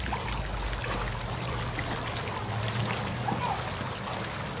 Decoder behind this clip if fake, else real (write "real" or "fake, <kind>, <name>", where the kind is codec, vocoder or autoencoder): real